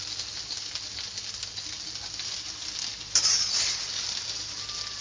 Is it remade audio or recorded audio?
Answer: recorded